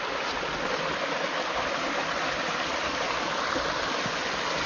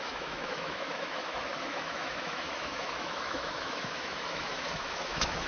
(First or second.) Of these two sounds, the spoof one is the second